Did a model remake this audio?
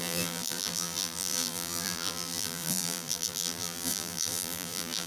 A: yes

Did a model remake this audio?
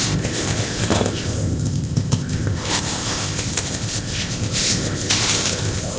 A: yes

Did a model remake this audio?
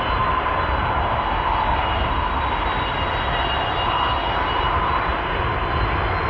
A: no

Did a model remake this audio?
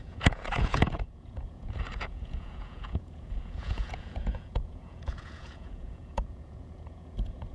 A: yes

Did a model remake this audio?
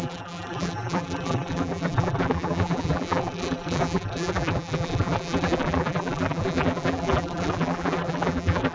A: yes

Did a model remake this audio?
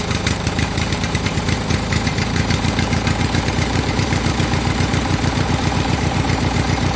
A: yes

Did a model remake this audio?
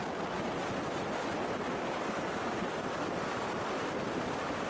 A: no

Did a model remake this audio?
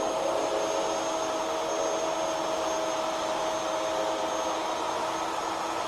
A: no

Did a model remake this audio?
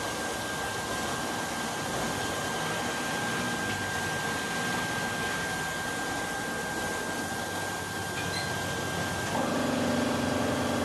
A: no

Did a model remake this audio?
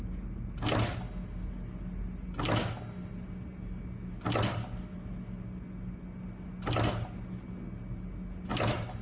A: no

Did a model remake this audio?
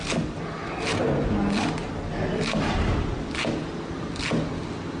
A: no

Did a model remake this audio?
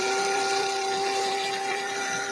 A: yes